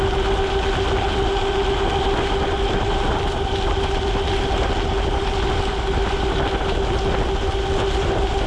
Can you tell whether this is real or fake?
real